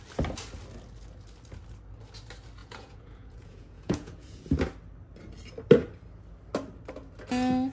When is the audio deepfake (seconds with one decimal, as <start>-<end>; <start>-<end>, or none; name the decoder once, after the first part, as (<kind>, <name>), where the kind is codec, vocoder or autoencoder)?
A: 2.6-4.4 (vocoder, Vocos)